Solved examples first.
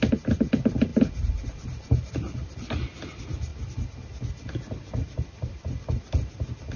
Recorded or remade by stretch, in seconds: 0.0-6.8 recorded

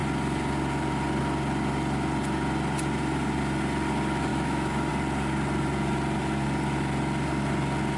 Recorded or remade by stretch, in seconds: 0.0-4.3 recorded; 4.3-4.9 remade; 4.9-8.0 recorded